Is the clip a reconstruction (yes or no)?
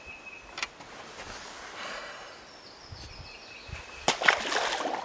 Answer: no